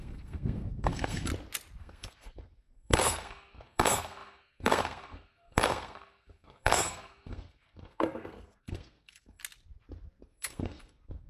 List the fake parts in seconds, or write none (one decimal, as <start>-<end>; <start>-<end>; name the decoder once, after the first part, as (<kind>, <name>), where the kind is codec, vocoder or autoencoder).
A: 0.0-1.3 (codec, SNAC); 1.8-9.4; 10.2-11.3